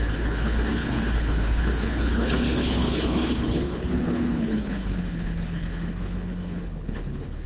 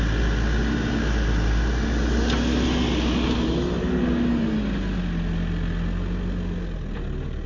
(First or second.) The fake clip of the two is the first